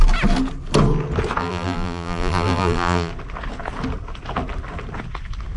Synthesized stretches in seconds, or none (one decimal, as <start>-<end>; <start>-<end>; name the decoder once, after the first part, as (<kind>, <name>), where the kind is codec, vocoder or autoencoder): 1.4-3.1 (vocoder, BigVGAN v2)